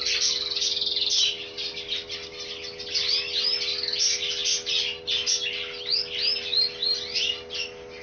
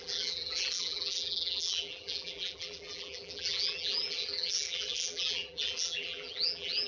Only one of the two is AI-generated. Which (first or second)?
second